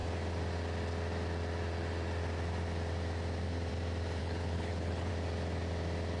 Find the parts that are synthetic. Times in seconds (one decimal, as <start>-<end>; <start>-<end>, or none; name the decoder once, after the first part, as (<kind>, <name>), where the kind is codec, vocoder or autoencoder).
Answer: 4.2-5.1 (codec, HILCodec)